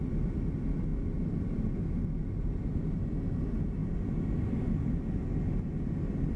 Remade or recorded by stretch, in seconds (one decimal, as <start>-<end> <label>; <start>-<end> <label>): 0.0-6.4 recorded